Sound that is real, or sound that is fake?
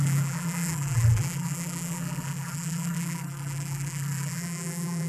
fake